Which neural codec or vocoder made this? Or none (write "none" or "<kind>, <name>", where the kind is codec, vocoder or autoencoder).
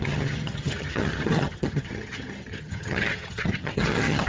vocoder, HiFi-GAN